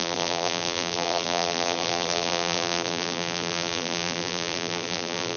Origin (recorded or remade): remade